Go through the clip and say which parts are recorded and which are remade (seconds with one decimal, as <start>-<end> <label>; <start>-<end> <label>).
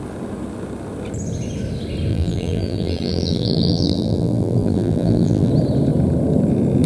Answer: 0.0-2.1 recorded; 2.1-5.5 remade; 5.5-6.9 recorded